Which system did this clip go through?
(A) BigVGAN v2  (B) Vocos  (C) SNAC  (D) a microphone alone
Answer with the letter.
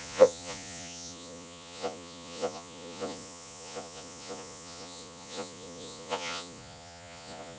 B